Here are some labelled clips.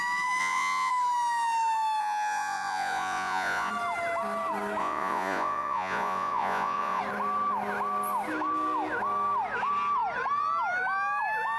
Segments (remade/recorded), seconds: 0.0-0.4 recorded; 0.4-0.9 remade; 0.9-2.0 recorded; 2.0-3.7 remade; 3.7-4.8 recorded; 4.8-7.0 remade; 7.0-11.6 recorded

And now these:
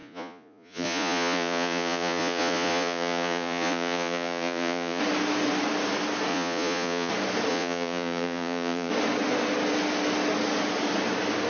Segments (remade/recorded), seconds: 0.0-5.0 remade; 5.0-6.3 recorded; 6.3-7.1 remade; 7.1-7.5 recorded; 7.5-8.9 remade; 8.9-11.5 recorded

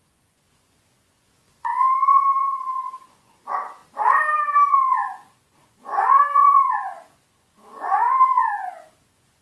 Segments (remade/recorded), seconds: 0.0-3.8 remade; 3.8-4.7 recorded; 4.7-9.4 remade

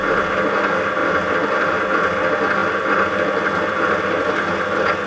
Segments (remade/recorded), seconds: 0.0-5.1 recorded

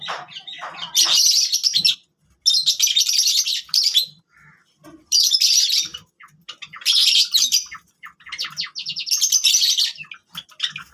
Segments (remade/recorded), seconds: 0.0-3.5 recorded; 3.5-6.9 remade; 6.9-10.9 recorded